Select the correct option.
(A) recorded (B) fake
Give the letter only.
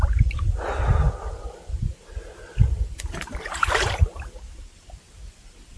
A